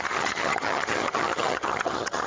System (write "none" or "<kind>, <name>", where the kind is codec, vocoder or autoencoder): vocoder, HiFi-GAN